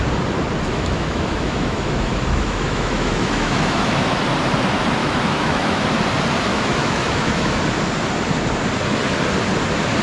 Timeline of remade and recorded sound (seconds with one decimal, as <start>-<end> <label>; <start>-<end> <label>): 0.0-0.7 recorded; 0.7-4.2 remade; 4.2-5.0 recorded; 5.0-5.8 remade; 5.8-6.5 recorded; 6.5-7.6 remade; 7.6-10.0 recorded